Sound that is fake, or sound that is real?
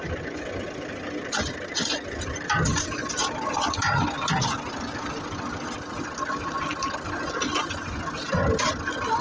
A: real